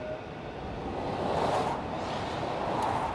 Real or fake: real